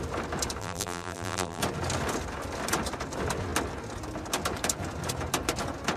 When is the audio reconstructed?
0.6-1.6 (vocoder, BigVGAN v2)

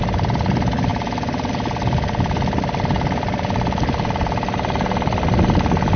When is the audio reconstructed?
0.9-1.5 (vocoder, BigVGAN v2)

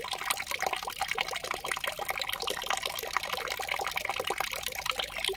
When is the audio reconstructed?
none